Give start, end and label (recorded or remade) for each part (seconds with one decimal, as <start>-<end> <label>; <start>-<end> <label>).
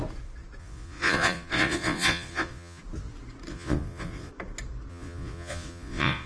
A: 0.0-0.6 recorded; 0.6-2.8 remade; 2.8-3.5 recorded; 3.5-4.3 remade; 4.3-4.9 recorded; 4.9-6.3 remade